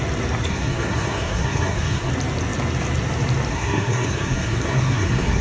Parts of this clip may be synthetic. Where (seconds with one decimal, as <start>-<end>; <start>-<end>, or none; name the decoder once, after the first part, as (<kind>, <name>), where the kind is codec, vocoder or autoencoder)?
0.5-2.1 (codec, SNAC); 3.5-5.4